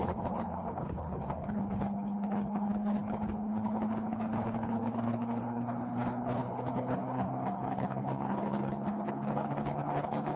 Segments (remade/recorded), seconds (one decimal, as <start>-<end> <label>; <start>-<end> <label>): 0.0-10.4 remade